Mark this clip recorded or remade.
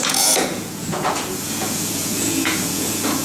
remade